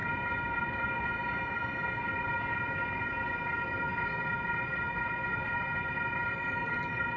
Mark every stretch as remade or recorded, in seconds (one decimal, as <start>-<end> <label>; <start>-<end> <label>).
0.0-7.2 recorded